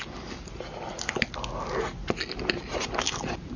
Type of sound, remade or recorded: recorded